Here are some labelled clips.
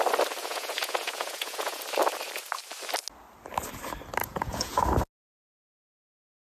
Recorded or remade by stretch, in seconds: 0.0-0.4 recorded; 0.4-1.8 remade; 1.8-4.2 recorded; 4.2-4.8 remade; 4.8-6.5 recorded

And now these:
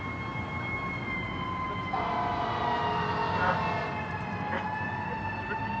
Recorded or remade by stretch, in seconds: 0.0-5.8 recorded

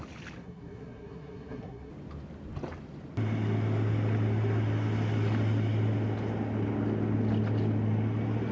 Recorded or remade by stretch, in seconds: 0.0-0.4 recorded; 0.4-1.9 remade; 1.9-8.5 recorded

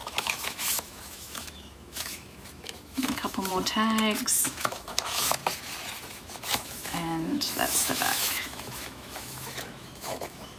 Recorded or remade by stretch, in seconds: 0.0-3.5 remade; 3.5-4.3 recorded; 4.3-5.4 remade; 5.4-6.1 recorded; 6.1-10.6 remade

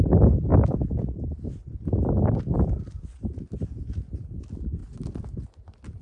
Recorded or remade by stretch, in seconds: 0.0-6.0 recorded

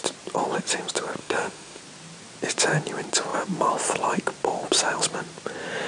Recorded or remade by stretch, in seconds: 0.0-1.2 recorded; 1.2-1.8 remade; 1.8-5.9 recorded

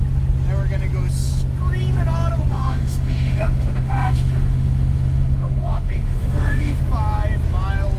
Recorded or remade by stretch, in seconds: 0.0-2.5 recorded; 2.5-6.8 remade; 6.8-8.0 recorded